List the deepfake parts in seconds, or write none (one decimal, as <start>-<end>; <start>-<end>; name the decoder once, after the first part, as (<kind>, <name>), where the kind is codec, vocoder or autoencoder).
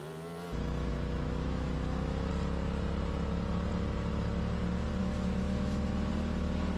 0.9-2.3 (autoencoder, DAC-VAE); 5.0-6.1